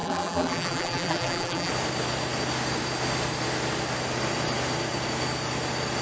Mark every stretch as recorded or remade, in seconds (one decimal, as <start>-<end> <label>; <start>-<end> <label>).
0.0-1.7 remade; 1.7-6.0 recorded